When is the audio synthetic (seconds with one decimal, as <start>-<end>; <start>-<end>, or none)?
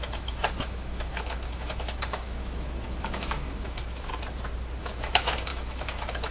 0.0-4.1; 4.8-6.3